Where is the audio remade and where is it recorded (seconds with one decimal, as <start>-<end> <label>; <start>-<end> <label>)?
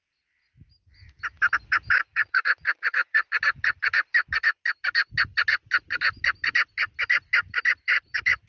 0.0-2.1 recorded; 2.1-3.3 remade; 3.3-8.5 recorded